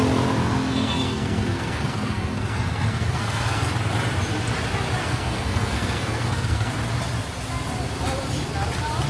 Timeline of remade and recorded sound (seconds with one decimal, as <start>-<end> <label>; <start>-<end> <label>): 0.0-0.4 recorded; 0.4-3.7 remade; 3.7-5.0 recorded; 5.0-6.7 remade; 6.7-9.1 recorded